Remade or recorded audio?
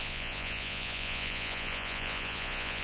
remade